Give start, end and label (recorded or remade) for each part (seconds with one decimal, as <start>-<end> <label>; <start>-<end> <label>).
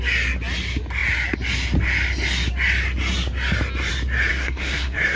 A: 0.0-4.3 recorded; 4.3-5.2 remade